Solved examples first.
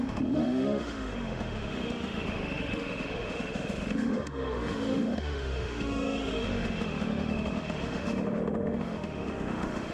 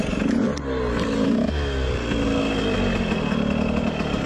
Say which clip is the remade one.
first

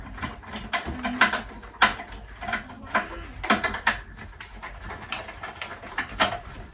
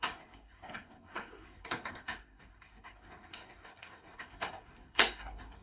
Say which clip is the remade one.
second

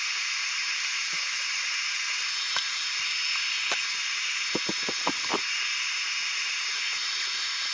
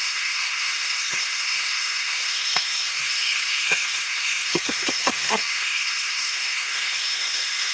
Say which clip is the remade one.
second